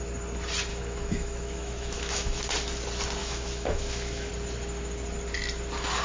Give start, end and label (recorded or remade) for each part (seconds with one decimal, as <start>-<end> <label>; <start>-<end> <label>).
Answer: 0.0-0.7 recorded; 0.7-2.4 remade; 2.4-3.2 recorded; 3.2-4.3 remade; 4.3-6.0 recorded